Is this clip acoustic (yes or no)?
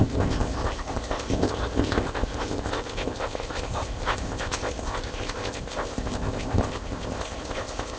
no